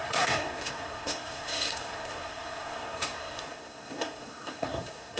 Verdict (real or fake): fake